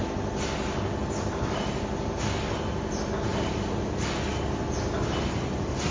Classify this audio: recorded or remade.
recorded